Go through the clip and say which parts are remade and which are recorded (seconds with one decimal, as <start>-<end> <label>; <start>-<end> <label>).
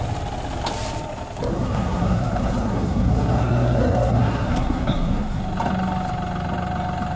0.0-1.5 recorded; 1.5-5.4 remade; 5.4-7.2 recorded